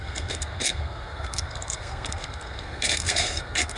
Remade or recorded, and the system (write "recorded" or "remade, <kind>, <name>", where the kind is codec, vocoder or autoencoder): remade, codec, SNAC